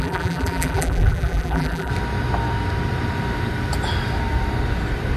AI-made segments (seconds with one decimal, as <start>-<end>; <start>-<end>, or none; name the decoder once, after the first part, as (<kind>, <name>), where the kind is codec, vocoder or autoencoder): 0.0-1.9 (vocoder, BigVGAN v2)